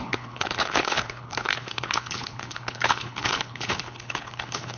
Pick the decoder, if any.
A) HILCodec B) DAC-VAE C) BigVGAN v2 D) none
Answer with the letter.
A